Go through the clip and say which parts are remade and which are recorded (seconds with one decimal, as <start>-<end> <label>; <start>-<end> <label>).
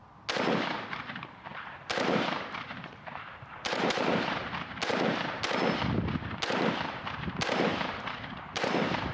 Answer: 0.0-0.7 recorded; 0.7-4.9 remade; 4.9-7.2 recorded; 7.2-9.1 remade